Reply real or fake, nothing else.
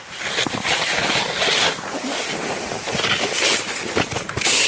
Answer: real